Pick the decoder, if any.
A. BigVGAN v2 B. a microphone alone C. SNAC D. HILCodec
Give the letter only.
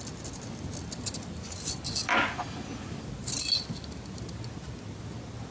B